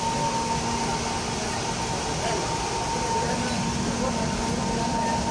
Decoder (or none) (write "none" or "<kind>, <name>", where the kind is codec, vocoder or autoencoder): none